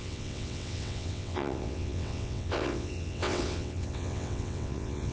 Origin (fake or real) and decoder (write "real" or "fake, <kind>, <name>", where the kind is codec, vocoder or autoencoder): fake, vocoder, WaveNeXt